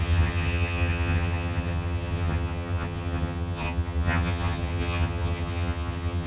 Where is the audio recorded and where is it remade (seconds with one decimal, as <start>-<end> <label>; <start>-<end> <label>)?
0.0-6.3 remade